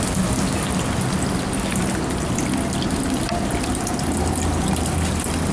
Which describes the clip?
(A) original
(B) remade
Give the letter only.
A